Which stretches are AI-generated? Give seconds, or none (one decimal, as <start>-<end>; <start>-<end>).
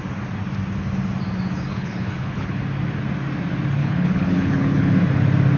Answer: 1.7-2.6; 3.8-4.9